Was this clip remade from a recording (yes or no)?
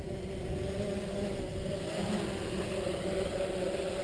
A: no